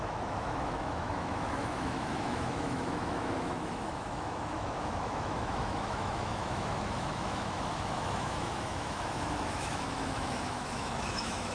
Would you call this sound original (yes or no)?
no